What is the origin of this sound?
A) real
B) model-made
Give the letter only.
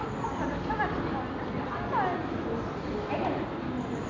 A